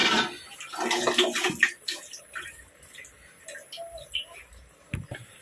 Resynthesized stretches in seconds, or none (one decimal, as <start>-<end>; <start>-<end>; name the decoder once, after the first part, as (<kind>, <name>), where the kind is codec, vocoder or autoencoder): none